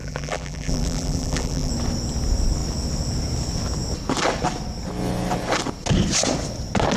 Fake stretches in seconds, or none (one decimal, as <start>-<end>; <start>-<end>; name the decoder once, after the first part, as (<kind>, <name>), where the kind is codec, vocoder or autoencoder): 0.0-1.7 (vocoder, BigVGAN v2)